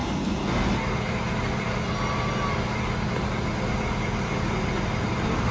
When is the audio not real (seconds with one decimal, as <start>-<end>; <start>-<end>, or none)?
none